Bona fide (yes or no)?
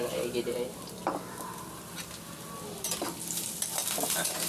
no